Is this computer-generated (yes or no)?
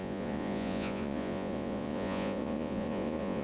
yes